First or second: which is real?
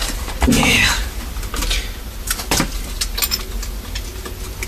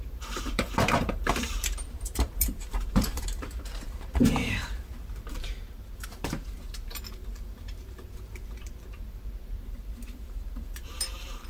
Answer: first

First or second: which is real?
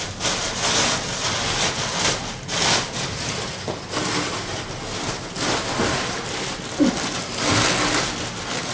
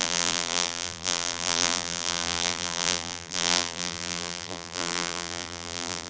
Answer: first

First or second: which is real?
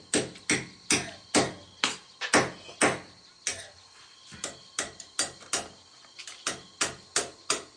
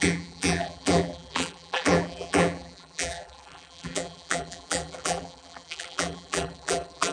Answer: first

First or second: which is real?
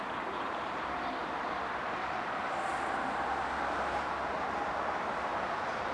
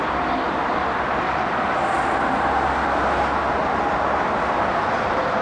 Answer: second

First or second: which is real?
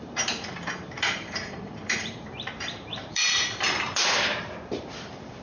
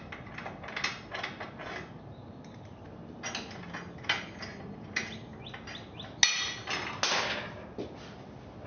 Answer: second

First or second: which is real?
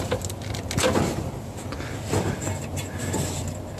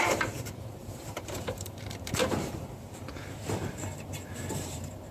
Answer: first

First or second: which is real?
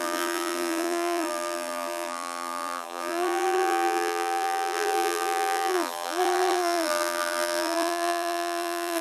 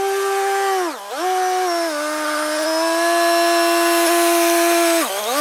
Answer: second